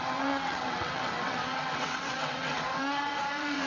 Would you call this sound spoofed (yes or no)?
yes